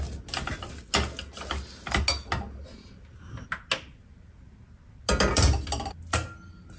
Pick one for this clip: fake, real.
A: real